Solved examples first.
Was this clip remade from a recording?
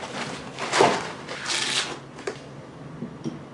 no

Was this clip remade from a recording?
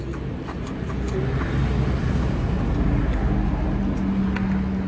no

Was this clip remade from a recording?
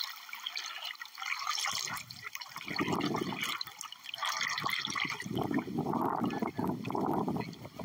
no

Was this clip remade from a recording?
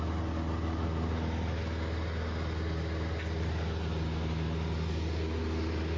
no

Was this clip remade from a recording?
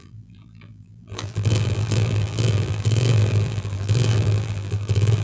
yes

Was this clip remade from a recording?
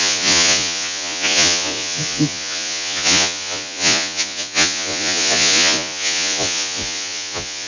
yes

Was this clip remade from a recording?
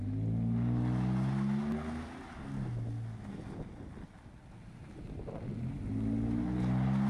no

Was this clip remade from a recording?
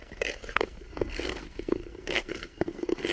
yes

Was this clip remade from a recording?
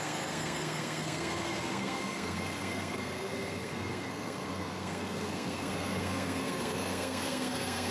yes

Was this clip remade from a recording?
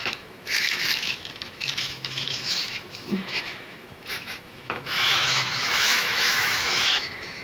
yes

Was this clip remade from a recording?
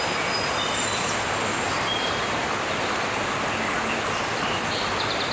no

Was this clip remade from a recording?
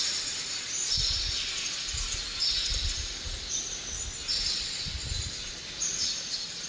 no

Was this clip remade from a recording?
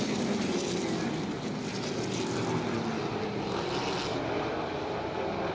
no